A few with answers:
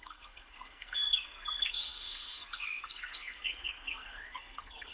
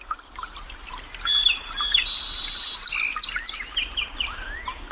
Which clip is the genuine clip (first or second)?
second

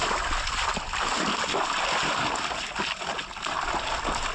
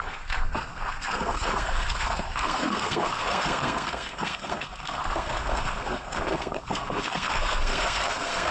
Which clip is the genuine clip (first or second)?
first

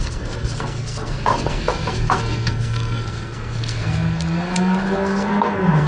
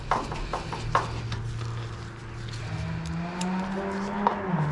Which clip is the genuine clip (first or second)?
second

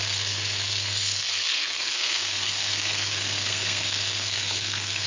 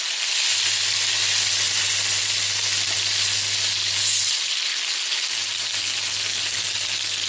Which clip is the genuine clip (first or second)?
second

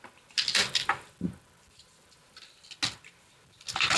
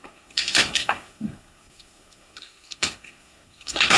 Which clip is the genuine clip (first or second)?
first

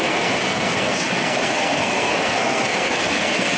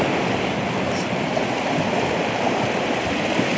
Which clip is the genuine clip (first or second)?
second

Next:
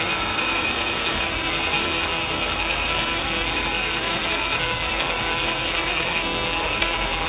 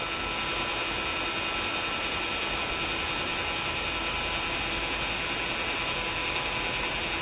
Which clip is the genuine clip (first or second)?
second